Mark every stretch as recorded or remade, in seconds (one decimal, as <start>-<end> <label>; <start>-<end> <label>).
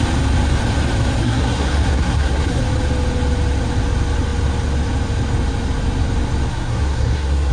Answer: 0.0-1.2 recorded; 1.2-2.6 remade; 2.6-6.5 recorded; 6.5-7.5 remade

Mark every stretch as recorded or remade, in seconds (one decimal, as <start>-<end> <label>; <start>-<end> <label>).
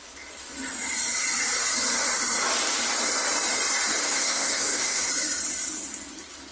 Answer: 0.0-4.0 recorded; 4.0-5.1 remade; 5.1-6.5 recorded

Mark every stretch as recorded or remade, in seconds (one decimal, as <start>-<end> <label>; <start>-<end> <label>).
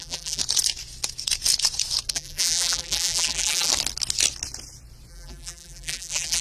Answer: 0.0-0.4 remade; 0.4-2.1 recorded; 2.1-3.7 remade; 3.7-5.1 recorded; 5.1-6.4 remade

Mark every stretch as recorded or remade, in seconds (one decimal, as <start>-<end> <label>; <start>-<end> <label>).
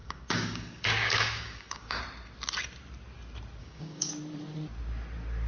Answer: 0.0-2.0 remade; 2.0-3.6 recorded; 3.6-4.1 remade; 4.1-5.5 recorded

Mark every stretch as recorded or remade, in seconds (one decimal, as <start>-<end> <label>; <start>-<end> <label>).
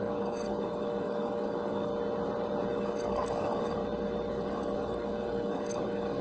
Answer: 0.0-1.9 remade; 1.9-2.7 recorded; 2.7-3.8 remade; 3.8-4.3 recorded; 4.3-6.2 remade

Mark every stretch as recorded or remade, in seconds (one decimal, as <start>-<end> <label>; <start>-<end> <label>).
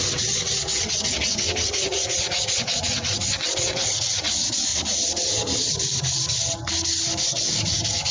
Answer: 0.0-4.7 remade; 4.7-7.2 recorded; 7.2-8.1 remade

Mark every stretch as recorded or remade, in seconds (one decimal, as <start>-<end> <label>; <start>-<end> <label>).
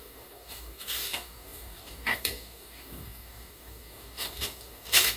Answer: 0.0-5.2 remade